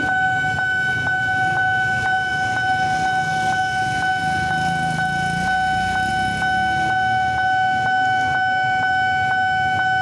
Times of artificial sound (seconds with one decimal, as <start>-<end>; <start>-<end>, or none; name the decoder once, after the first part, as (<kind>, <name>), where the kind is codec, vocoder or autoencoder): none